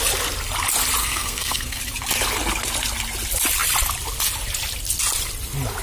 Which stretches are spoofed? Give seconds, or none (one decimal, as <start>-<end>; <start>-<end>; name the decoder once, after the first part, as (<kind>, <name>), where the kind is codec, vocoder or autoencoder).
1.0-1.8 (codec, SNAC)